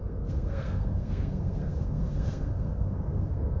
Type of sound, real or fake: fake